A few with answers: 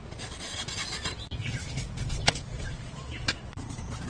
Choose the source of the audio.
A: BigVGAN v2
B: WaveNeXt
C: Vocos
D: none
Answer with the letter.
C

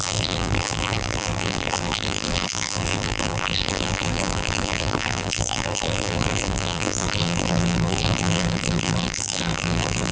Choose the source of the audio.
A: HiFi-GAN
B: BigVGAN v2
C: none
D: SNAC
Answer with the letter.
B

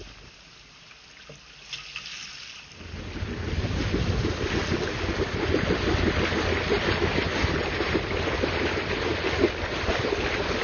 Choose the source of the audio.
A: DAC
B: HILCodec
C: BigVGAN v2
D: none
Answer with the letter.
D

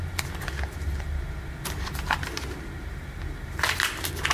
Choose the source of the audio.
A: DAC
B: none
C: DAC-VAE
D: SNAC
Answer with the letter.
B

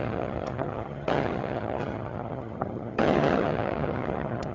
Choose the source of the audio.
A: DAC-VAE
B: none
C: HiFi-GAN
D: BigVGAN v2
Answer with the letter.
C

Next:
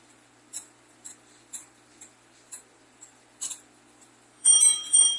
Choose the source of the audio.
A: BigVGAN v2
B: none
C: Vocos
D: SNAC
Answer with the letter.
A